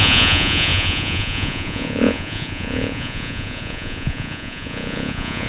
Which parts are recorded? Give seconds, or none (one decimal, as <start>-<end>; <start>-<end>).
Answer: none